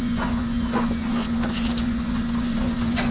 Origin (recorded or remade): remade